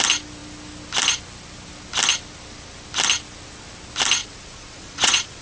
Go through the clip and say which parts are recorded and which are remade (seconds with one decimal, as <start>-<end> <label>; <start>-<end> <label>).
0.0-4.2 recorded; 4.2-5.4 remade